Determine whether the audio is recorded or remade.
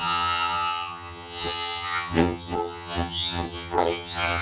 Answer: remade